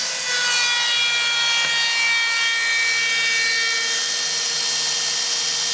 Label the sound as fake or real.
real